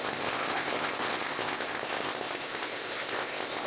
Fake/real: fake